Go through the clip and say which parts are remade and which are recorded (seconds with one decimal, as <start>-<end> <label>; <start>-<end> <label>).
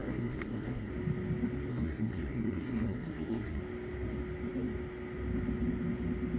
0.0-0.9 remade; 0.9-1.7 recorded; 1.7-3.6 remade; 3.6-6.4 recorded